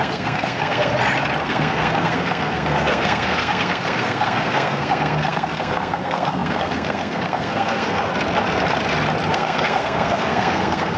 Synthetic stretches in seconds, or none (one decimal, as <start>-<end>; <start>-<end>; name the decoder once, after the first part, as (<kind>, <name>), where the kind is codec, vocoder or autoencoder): 0.0-0.9 (codec, SNAC); 1.4-8.1; 9.3-11.0